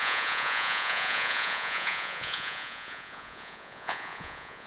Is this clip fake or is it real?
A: fake